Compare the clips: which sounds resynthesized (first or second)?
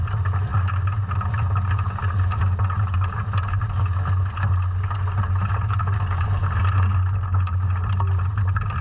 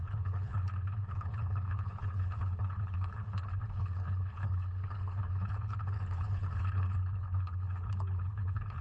second